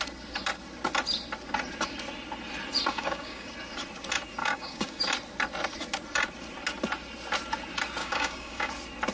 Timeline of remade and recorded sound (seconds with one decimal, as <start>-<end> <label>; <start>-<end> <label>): 0.0-2.9 recorded; 2.9-3.5 remade; 3.5-4.4 recorded; 4.4-5.0 remade; 5.0-8.0 recorded; 8.0-8.7 remade; 8.7-9.1 recorded